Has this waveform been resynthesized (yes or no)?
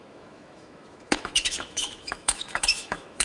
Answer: yes